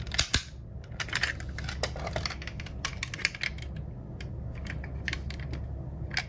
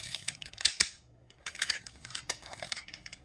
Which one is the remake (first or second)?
second